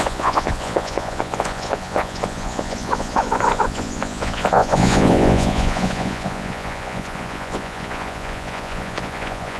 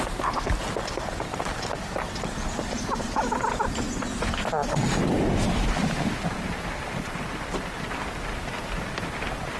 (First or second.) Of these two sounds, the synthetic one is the first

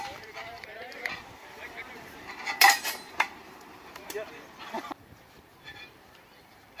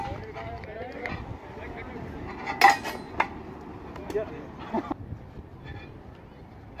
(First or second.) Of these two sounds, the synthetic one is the first